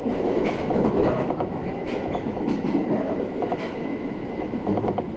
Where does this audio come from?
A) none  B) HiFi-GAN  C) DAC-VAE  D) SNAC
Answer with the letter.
C